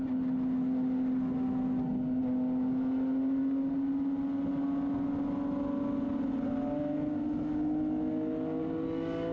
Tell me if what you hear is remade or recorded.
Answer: recorded